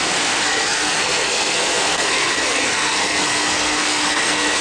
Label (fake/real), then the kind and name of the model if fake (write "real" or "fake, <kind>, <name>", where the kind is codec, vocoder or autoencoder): fake, codec, SNAC